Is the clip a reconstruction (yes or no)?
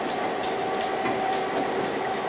no